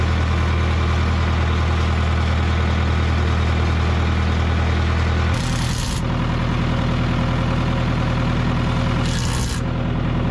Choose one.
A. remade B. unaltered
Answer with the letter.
B